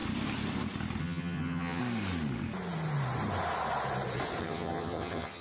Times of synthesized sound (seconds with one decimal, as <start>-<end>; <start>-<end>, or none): 1.0-1.8; 4.4-5.4